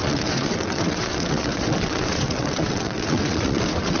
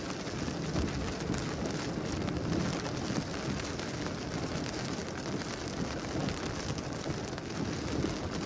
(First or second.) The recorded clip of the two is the second